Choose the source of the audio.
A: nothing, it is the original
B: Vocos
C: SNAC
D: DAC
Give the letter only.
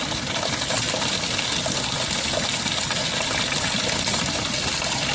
A